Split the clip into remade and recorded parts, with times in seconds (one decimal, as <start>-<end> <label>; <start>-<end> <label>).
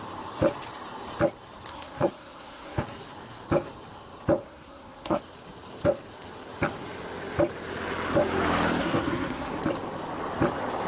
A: 0.0-1.7 recorded; 1.7-2.8 remade; 2.8-4.4 recorded; 4.4-5.2 remade; 5.2-8.8 recorded; 8.8-9.5 remade; 9.5-10.9 recorded